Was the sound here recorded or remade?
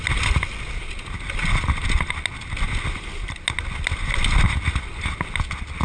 recorded